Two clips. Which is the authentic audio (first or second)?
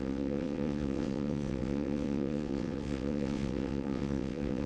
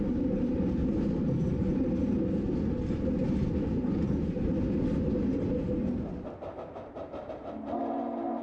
second